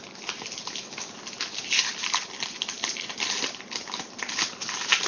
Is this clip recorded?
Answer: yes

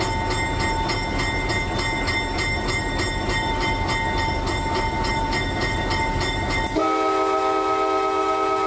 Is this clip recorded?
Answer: yes